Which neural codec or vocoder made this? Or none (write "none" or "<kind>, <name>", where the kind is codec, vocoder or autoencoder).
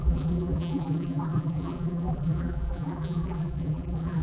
vocoder, BigVGAN v2